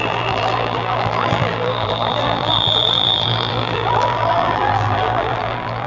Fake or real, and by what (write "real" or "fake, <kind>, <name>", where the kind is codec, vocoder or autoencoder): fake, vocoder, BigVGAN v2